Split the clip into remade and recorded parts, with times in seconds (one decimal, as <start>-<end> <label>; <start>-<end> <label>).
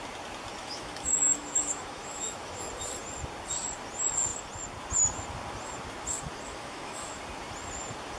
0.0-0.6 recorded; 0.6-2.6 remade; 2.6-6.5 recorded; 6.5-7.2 remade; 7.2-8.2 recorded